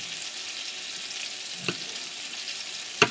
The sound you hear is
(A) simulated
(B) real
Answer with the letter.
B